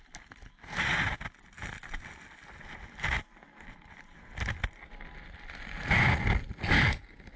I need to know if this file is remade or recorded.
recorded